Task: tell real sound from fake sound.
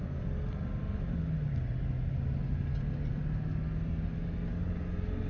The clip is real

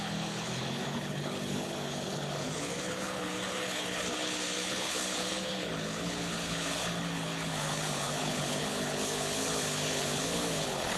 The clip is fake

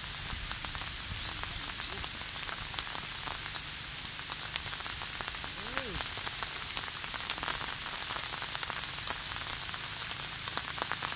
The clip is real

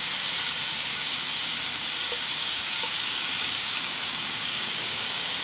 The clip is fake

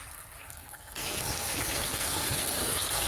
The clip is fake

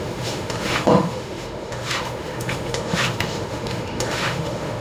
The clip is fake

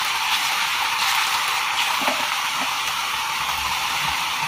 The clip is fake